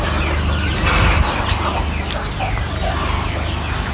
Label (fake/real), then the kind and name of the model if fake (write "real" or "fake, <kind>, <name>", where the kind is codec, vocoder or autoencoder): real